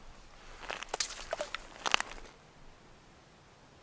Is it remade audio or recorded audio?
recorded